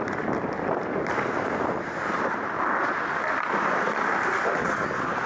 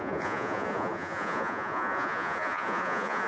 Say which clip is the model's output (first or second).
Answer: second